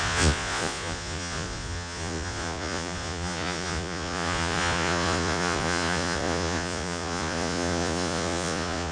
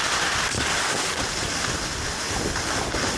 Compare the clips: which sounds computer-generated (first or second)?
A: first